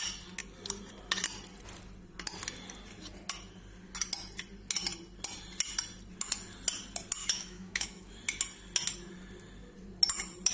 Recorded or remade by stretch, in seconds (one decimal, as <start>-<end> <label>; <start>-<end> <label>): 0.0-7.2 recorded; 7.2-8.2 remade; 8.2-10.5 recorded